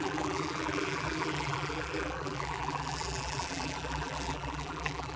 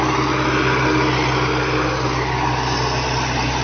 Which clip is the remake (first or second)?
first